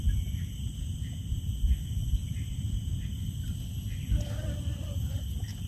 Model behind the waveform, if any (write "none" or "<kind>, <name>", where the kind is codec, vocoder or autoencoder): none